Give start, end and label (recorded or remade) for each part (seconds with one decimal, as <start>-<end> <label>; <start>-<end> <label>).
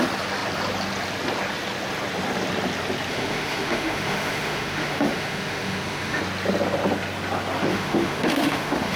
0.0-3.1 recorded; 3.1-6.2 remade; 6.2-7.7 recorded; 7.7-9.0 remade